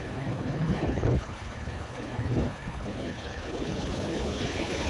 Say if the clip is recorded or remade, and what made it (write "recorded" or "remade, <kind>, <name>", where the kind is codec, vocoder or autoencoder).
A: remade, codec, HILCodec